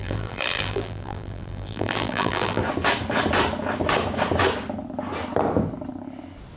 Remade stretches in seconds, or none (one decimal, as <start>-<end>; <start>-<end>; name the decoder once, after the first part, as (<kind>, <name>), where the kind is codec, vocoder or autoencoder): 0.0-2.6 (vocoder, BigVGAN v2)